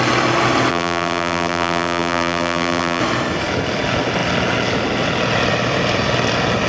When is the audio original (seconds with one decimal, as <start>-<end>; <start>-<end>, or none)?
0.0-0.7; 3.0-6.7